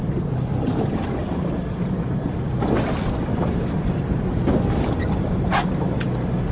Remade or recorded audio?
recorded